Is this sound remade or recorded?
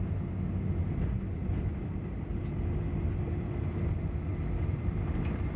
recorded